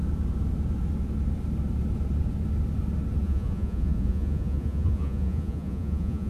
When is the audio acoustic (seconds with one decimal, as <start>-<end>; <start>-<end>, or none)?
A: 0.0-3.2